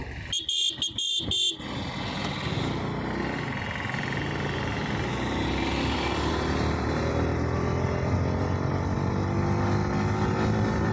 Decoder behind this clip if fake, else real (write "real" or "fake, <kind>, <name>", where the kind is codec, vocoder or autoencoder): real